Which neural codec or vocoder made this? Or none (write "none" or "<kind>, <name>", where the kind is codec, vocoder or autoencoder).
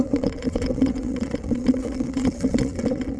vocoder, WaveNeXt